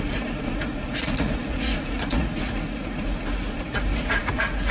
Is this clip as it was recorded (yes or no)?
no